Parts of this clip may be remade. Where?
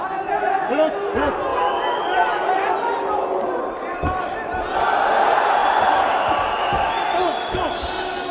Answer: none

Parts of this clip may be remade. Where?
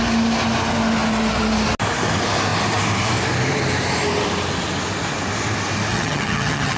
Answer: 5.9-6.8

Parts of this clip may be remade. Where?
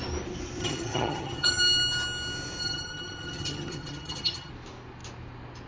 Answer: 0.6-1.6; 2.6-4.5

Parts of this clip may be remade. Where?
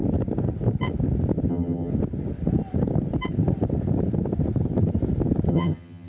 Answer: 1.5-1.9; 5.5-6.1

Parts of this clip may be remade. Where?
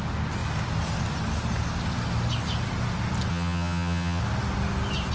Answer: 3.3-4.2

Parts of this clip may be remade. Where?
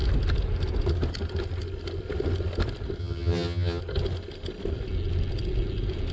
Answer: 3.0-3.8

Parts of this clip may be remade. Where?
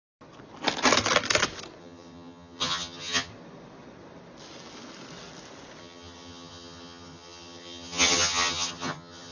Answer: 1.8-3.3; 5.8-9.3